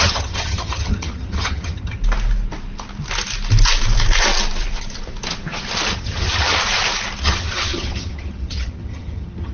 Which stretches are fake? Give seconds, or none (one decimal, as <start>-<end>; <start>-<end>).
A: 0.0-2.0; 5.9-6.6; 7.2-9.5